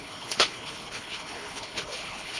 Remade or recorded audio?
remade